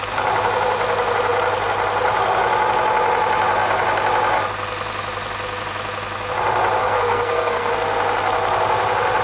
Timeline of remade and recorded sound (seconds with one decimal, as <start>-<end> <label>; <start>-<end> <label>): 0.0-6.8 recorded; 6.8-7.7 remade; 7.7-9.2 recorded